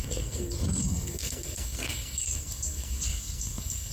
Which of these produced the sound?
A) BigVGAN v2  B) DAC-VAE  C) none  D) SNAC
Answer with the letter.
D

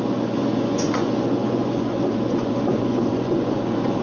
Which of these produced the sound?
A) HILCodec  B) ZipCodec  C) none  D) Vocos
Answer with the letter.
D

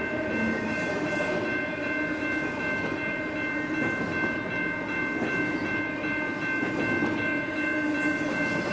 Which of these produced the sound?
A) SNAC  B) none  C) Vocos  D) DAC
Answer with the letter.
B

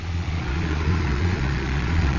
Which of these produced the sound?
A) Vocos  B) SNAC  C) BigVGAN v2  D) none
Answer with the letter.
A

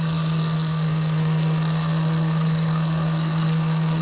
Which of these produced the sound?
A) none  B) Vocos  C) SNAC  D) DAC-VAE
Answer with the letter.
C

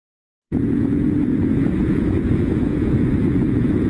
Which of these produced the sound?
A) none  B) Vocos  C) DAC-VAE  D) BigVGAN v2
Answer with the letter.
B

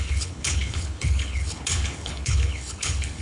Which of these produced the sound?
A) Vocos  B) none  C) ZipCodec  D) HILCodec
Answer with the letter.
D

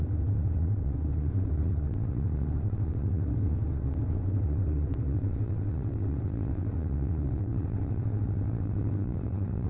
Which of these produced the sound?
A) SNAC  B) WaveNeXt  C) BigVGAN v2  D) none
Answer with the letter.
B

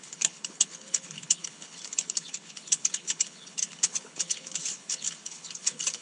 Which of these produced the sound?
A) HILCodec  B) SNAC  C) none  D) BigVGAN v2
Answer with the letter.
A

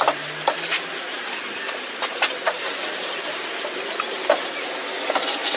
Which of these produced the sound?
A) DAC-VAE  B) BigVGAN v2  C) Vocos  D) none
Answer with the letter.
D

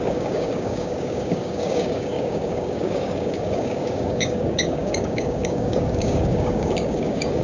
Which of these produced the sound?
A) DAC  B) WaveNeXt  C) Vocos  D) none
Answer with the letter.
A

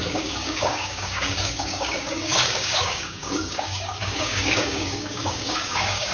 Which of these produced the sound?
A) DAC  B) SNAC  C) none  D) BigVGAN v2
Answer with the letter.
A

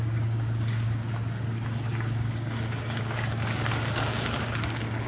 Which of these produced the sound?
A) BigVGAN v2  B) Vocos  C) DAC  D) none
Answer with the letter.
C